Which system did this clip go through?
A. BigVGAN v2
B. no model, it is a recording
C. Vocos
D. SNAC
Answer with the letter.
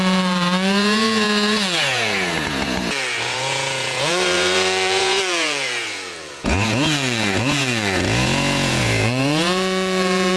C